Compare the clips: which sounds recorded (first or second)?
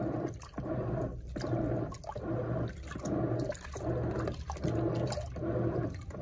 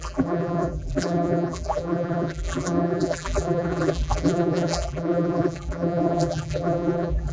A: first